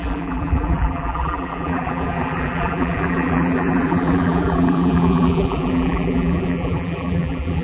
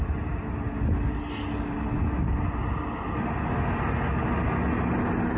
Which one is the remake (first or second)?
first